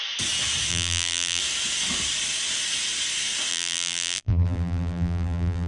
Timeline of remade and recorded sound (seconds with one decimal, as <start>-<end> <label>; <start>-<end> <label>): 0.0-0.7 recorded; 0.7-1.4 remade; 1.4-3.5 recorded; 3.5-5.7 remade

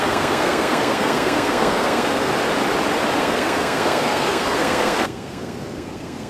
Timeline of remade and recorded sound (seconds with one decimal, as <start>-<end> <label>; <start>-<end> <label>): 0.0-2.3 remade; 2.3-3.2 recorded; 3.2-6.3 remade

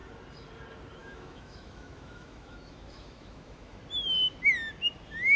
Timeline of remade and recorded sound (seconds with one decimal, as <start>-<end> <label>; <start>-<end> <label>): 0.0-1.0 recorded; 1.0-3.8 remade; 3.8-5.4 recorded

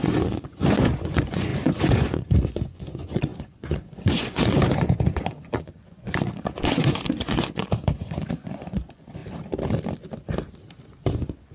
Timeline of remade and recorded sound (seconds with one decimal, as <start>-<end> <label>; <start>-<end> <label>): 0.0-9.2 remade; 9.2-11.1 recorded; 11.1-11.5 remade

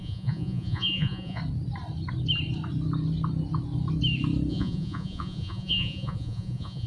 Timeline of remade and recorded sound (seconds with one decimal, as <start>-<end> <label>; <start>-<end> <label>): 0.0-1.4 remade; 1.4-4.5 recorded; 4.5-6.9 remade

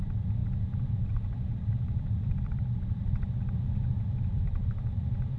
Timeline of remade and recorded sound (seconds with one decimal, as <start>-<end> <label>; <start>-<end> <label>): 0.0-0.4 remade; 0.4-1.1 recorded; 1.1-3.0 remade; 3.0-4.3 recorded; 4.3-5.4 remade

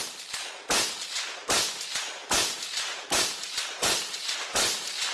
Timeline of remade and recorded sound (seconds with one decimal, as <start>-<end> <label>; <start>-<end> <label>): 0.0-2.2 recorded; 2.2-5.1 remade